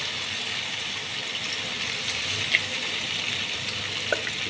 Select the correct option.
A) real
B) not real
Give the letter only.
A